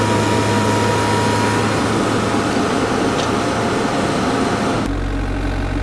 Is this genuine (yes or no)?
yes